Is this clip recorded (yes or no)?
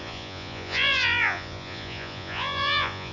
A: no